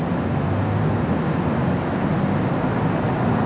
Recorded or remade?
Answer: recorded